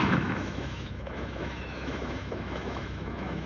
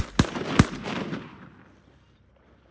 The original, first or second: second